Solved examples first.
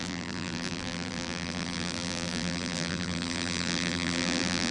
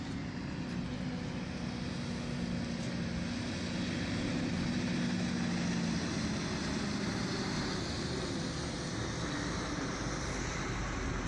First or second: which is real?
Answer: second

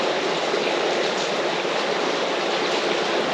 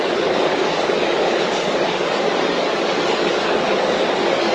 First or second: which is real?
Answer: first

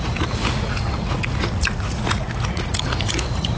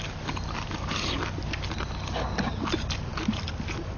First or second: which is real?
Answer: second